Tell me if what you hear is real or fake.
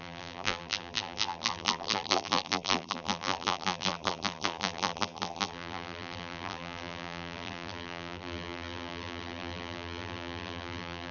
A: fake